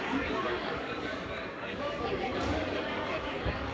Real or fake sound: fake